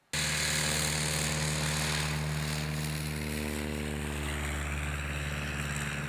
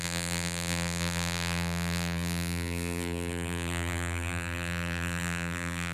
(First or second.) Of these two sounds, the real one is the first